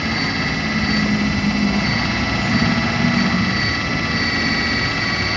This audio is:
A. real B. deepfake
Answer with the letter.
A